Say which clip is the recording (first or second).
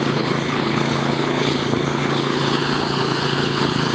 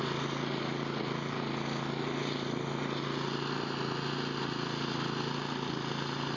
second